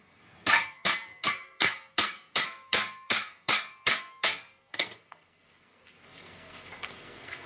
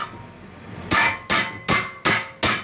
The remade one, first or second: first